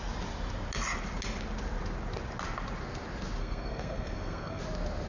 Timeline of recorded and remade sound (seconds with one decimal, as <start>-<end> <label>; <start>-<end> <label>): 0.0-3.4 recorded; 3.4-4.6 remade; 4.6-5.1 recorded